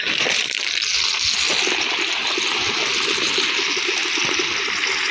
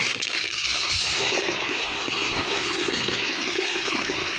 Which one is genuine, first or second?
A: first